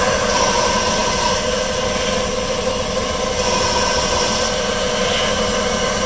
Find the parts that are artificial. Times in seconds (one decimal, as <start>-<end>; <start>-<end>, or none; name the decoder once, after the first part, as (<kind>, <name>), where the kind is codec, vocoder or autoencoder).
none